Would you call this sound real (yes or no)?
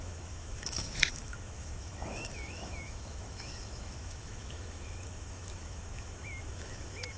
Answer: no